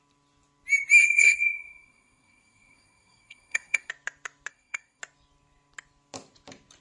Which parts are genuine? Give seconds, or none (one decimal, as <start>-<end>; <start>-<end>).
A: 0.0-1.0; 3.9-4.5; 5.0-6.8